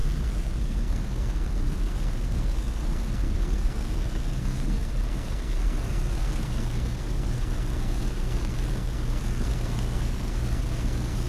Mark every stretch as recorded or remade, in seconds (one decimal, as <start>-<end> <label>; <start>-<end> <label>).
0.0-11.3 remade